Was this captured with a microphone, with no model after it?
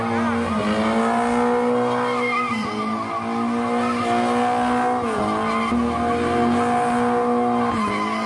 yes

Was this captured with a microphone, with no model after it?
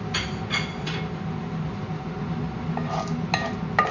yes